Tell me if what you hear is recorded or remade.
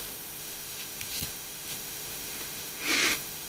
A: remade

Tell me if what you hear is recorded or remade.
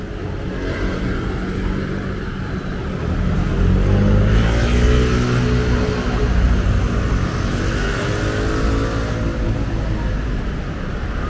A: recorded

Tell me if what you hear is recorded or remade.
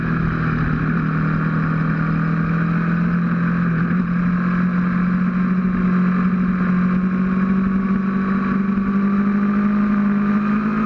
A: recorded